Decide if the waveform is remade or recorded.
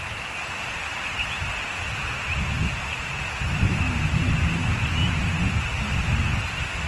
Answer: recorded